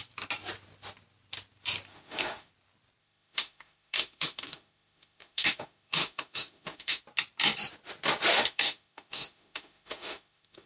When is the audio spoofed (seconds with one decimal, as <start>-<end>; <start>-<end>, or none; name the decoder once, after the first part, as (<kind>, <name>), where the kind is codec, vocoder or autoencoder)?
1.9-2.5 (autoencoder, DAC-VAE); 3.0-7.0; 8.3-10.7